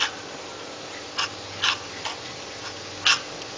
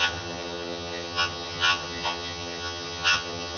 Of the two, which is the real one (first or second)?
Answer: first